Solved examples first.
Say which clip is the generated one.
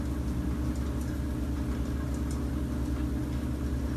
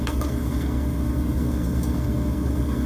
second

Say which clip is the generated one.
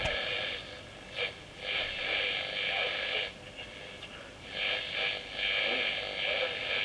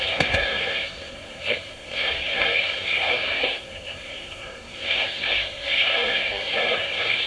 second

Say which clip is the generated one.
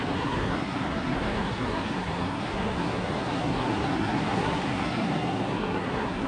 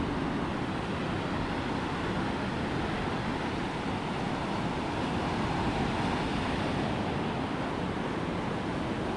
first